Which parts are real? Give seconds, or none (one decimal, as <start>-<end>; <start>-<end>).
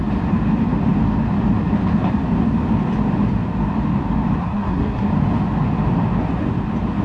0.0-4.4; 5.1-7.0